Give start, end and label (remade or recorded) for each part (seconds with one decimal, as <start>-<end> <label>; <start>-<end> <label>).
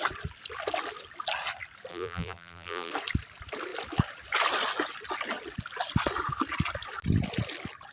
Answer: 0.0-1.9 recorded; 1.9-2.9 remade; 2.9-7.9 recorded